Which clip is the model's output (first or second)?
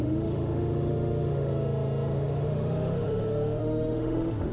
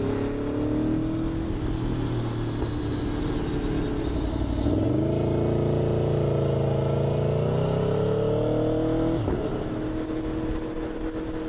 first